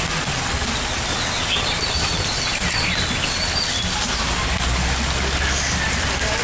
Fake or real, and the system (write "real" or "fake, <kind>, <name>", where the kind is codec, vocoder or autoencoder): real